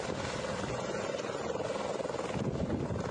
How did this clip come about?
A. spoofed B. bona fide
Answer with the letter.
B